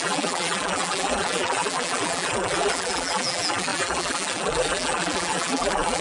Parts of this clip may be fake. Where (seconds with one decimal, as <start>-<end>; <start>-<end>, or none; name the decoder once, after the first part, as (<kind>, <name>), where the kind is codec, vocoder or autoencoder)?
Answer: 0.0-6.0 (vocoder, BigVGAN v2)